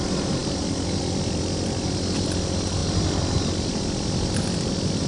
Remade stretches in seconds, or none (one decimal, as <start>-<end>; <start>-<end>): none